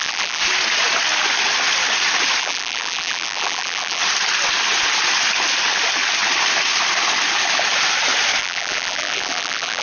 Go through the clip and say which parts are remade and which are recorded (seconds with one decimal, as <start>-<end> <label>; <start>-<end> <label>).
0.0-0.4 remade; 0.4-2.4 recorded; 2.4-4.0 remade; 4.0-8.4 recorded; 8.4-9.8 remade